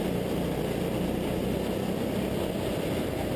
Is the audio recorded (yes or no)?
yes